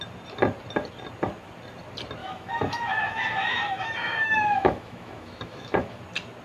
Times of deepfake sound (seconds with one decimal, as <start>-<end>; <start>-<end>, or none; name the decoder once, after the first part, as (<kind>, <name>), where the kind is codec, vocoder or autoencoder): 2.2-6.0 (autoencoder, DAC-VAE)